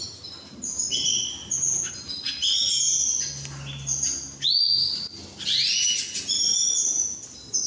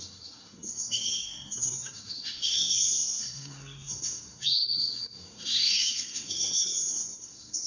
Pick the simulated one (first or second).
second